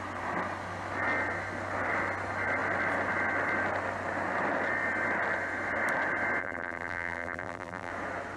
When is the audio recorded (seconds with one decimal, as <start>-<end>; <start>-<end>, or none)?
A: 0.0-6.4; 7.9-8.4